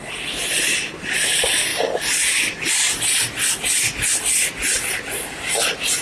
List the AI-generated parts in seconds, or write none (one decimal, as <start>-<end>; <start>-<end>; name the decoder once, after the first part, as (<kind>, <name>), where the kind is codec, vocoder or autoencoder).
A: none